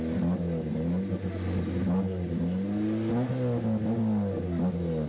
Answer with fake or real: real